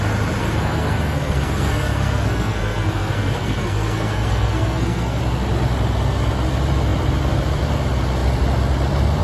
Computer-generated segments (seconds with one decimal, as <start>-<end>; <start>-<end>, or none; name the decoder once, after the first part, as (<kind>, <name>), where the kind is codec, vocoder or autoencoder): 0.4-5.2 (codec, SNAC)